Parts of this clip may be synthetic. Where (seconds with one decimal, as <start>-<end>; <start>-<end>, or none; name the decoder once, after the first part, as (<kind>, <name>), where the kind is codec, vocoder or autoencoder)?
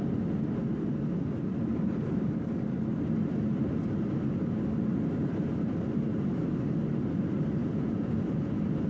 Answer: 7.6-8.5 (vocoder, Vocos)